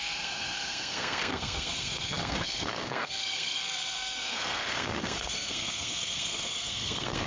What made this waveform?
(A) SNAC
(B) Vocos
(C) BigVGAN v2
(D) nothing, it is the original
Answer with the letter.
A